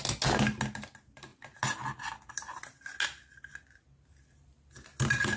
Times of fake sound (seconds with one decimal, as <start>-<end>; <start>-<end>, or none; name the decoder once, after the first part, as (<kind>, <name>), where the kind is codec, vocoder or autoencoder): none